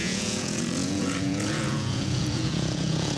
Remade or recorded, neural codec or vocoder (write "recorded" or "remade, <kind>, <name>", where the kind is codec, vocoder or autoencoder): remade, vocoder, Vocos